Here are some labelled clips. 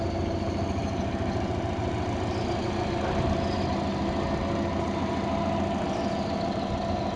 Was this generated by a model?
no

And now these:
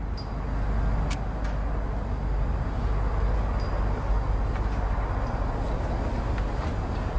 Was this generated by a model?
no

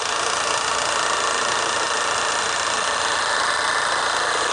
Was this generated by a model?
no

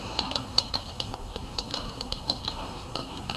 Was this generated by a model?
yes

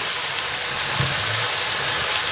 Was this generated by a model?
no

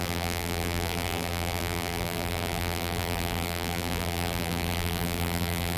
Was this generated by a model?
yes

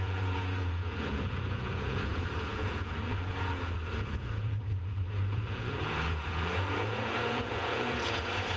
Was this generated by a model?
yes